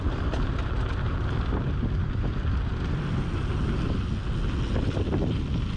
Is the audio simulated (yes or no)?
no